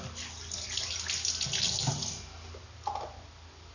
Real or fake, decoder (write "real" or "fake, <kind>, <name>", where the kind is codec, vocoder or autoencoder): real